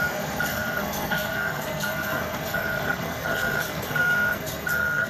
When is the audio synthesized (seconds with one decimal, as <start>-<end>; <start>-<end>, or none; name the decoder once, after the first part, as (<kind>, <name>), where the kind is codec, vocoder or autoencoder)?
0.0-5.1 (codec, SNAC)